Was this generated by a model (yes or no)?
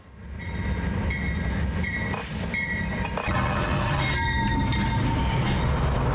no